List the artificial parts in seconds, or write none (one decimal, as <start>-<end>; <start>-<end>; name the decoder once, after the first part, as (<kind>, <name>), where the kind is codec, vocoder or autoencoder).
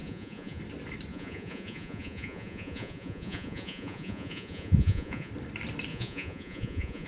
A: 0.0-0.6 (vocoder, Vocos); 1.1-5.3; 5.9-7.1